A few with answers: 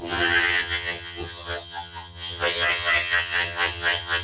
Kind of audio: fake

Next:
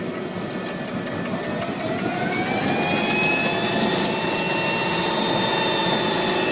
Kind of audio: real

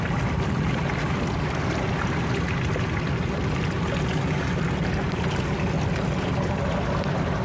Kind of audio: real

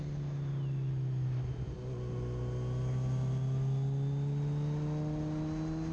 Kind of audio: real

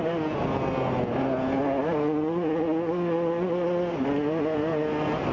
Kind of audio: real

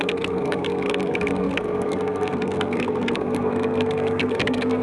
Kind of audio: fake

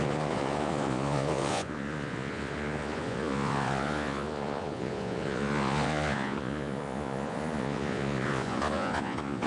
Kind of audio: fake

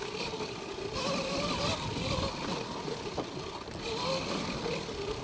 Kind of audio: real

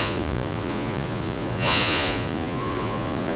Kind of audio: fake